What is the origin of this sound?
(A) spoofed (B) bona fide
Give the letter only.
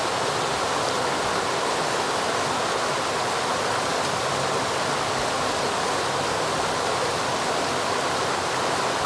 B